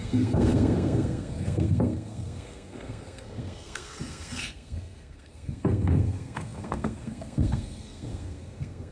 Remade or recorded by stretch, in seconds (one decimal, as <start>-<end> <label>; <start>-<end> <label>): 0.0-8.9 remade

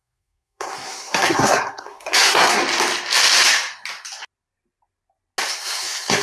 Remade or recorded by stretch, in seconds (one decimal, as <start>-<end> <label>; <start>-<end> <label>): 0.0-2.6 remade; 2.6-5.5 recorded; 5.5-6.2 remade

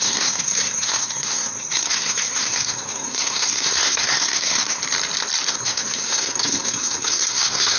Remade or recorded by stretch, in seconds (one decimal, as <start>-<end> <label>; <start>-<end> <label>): 0.0-4.8 remade; 4.8-5.5 recorded; 5.5-7.8 remade

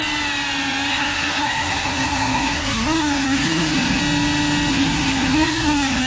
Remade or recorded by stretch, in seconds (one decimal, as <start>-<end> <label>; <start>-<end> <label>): 0.0-0.9 recorded; 0.9-4.0 remade; 4.0-4.7 recorded; 4.7-6.1 remade

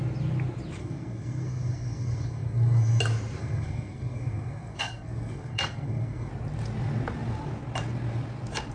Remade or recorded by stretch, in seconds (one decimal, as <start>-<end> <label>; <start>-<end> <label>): 0.0-0.8 recorded; 0.8-3.0 remade; 3.0-3.4 recorded; 3.4-6.3 remade; 6.3-8.7 recorded

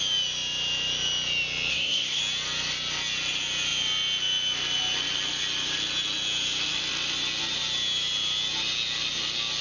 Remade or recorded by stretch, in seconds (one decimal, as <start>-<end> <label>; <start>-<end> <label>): 0.0-1.7 recorded; 1.7-2.2 remade; 2.2-9.6 recorded